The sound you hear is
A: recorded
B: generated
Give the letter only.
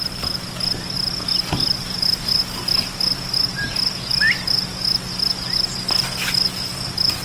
A